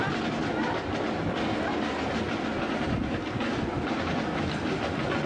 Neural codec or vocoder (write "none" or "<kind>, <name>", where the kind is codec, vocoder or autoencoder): none